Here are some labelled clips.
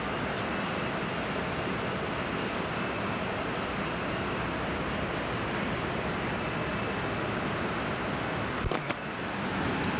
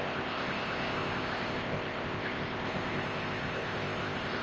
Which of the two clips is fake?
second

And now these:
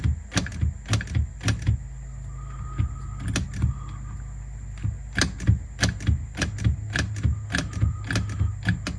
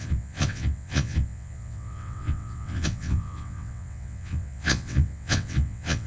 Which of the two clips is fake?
second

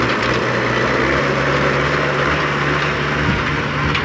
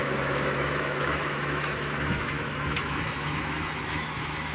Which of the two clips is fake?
second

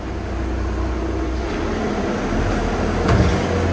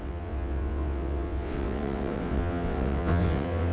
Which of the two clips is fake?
second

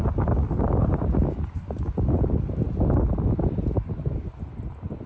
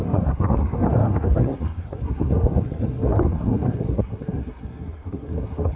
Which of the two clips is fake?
second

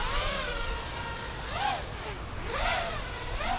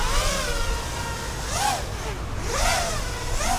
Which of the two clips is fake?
first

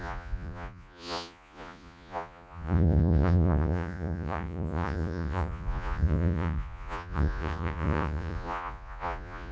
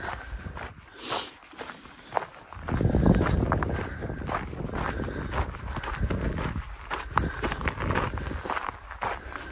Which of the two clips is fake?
first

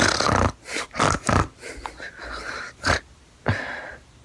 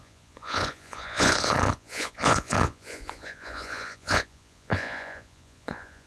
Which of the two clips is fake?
second